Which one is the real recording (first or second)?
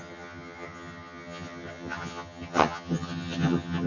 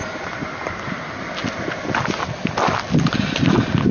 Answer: second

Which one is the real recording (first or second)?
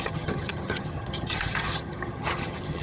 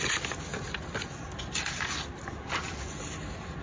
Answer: second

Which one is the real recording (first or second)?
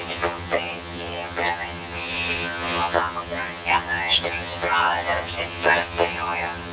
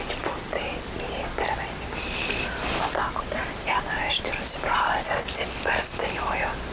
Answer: second